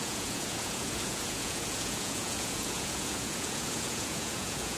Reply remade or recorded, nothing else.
remade